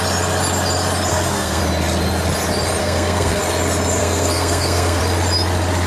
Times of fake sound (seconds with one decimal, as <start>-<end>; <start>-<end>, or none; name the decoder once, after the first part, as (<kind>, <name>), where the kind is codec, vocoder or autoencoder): 1.1-1.6 (codec, SNAC); 2.8-3.4; 4.0-5.0